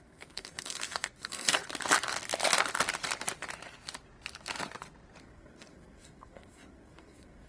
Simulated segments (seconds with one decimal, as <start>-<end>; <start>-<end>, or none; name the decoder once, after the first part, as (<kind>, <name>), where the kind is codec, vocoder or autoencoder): 0.0-1.6 (codec, SNAC); 5.2-7.5